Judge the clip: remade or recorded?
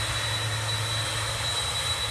recorded